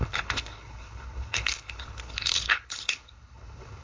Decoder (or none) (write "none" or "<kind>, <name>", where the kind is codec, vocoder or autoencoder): codec, HILCodec